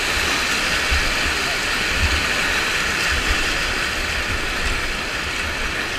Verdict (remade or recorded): recorded